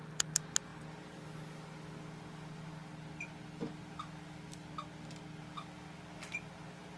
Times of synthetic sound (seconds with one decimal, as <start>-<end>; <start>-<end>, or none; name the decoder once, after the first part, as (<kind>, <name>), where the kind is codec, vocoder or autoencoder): none